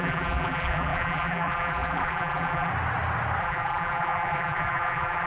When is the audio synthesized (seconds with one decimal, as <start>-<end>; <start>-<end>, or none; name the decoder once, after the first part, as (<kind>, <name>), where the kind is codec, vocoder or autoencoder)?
0.0-2.7 (vocoder, BigVGAN v2); 3.4-5.3

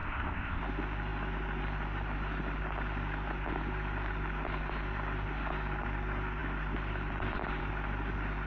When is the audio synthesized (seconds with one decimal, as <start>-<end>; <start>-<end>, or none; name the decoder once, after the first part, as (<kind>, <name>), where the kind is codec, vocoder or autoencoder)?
0.0-0.6 (codec, ZipCodec)

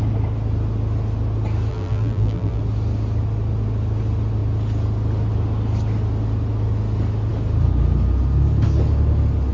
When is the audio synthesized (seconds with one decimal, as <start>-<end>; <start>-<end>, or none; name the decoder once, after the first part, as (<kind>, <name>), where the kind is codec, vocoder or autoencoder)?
1.7-2.6 (vocoder, BigVGAN v2)

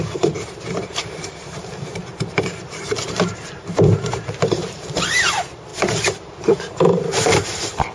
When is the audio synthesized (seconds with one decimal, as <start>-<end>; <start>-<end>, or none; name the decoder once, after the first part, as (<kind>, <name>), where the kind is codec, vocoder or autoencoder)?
0.0-7.9 (vocoder, BigVGAN v2)

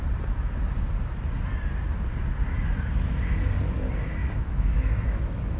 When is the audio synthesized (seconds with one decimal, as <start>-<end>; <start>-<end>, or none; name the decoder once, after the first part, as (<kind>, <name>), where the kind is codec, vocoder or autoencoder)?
4.2-5.6 (autoencoder, DAC-VAE)

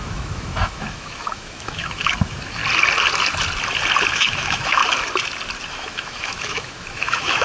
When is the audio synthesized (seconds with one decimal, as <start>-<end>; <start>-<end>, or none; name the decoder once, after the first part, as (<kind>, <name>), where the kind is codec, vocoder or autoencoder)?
0.0-2.6 (autoencoder, DAC-VAE); 4.1-4.8; 5.7-7.4

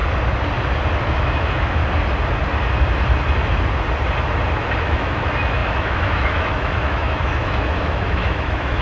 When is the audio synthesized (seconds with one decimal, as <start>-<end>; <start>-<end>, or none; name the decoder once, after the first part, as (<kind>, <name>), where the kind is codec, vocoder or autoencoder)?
1.0-1.8 (autoencoder, DAC-VAE); 4.8-8.8